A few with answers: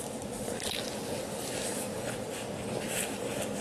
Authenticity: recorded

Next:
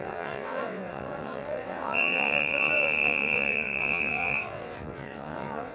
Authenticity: remade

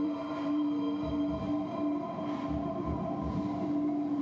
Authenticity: remade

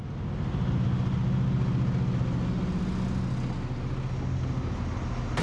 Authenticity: recorded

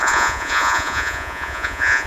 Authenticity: remade